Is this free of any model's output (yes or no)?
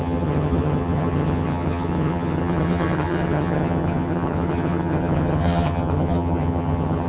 no